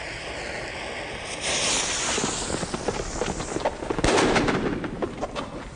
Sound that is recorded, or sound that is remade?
recorded